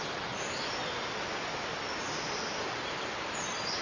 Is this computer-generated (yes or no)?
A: no